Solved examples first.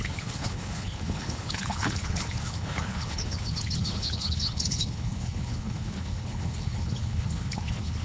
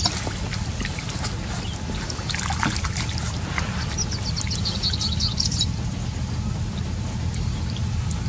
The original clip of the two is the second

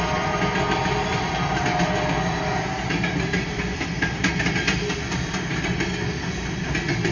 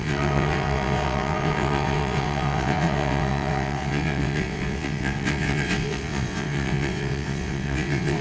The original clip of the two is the first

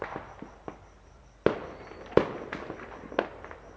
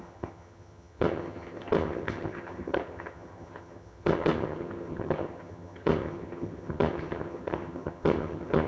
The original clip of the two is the first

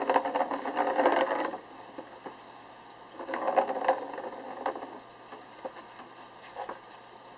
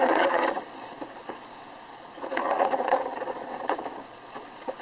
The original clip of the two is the first